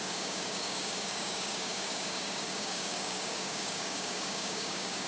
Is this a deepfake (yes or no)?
yes